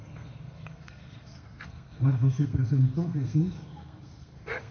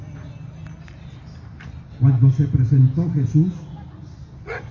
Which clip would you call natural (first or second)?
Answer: second